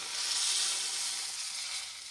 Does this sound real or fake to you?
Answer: real